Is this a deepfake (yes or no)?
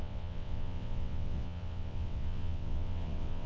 yes